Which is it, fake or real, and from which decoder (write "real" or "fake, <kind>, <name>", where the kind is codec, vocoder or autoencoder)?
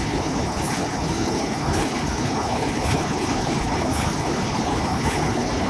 fake, codec, HILCodec